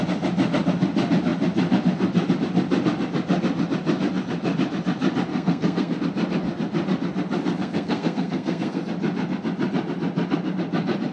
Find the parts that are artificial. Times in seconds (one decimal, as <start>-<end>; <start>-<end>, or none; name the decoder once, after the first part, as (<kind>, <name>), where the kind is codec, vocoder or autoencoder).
5.3-6.0 (codec, SNAC); 7.6-8.8